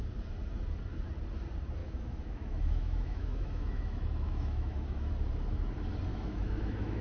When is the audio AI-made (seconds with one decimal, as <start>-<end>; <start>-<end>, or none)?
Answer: 1.8-5.1; 6.1-7.0